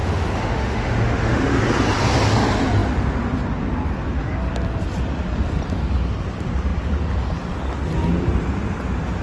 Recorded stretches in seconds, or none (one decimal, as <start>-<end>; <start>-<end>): 1.6-9.2